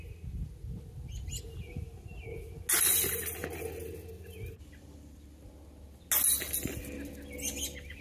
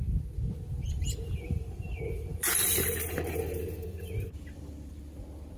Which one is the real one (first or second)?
first